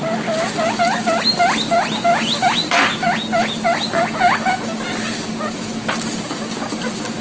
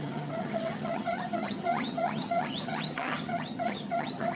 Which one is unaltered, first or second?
first